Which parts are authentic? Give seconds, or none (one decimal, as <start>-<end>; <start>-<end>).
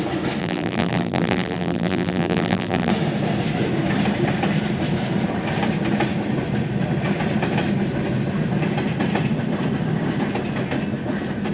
0.0-0.4; 2.9-11.5